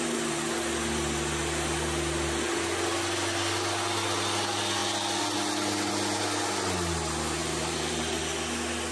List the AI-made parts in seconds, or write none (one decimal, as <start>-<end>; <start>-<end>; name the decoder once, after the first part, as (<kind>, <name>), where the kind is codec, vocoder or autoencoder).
7.4-8.2 (vocoder, BigVGAN v2)